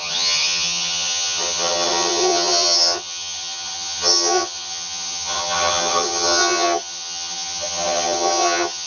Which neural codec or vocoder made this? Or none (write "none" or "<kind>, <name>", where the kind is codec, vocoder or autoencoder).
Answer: vocoder, HiFi-GAN